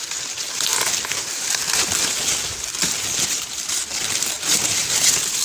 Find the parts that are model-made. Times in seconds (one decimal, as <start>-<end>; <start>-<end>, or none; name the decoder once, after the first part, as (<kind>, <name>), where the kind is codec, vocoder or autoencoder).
none

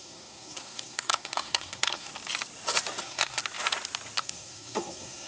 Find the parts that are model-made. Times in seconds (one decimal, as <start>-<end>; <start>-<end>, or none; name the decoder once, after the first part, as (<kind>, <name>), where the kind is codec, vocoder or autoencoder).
0.0-2.1 (codec, SNAC); 3.0-3.4; 4.2-5.3

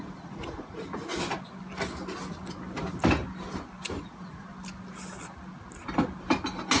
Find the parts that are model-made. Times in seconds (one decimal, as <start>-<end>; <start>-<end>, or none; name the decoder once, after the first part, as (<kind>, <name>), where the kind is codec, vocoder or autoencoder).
0.0-1.1 (vocoder, Vocos); 4.0-4.5

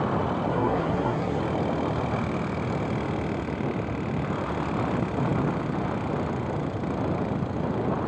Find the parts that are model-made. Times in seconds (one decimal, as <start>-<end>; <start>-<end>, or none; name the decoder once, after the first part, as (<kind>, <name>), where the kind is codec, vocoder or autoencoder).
0.5-1.4 (codec, SNAC)

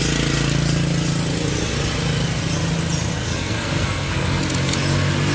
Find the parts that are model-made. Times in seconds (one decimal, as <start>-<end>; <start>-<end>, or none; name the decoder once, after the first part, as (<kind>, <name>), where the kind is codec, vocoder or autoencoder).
3.1-4.4 (codec, SNAC)